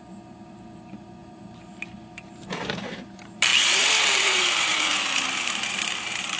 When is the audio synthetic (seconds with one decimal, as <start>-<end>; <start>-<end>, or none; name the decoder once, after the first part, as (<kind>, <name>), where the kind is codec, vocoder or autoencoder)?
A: 0.0-6.4 (vocoder, BigVGAN v2)